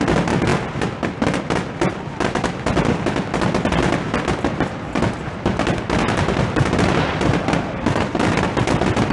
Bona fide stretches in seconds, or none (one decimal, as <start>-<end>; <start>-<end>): 0.0-9.1